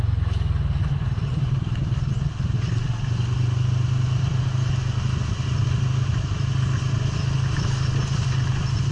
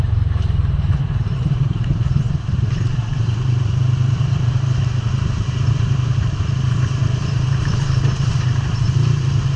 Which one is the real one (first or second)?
first